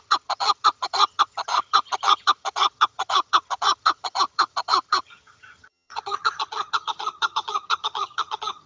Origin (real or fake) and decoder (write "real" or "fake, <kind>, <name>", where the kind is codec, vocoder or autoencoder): fake, vocoder, HiFi-GAN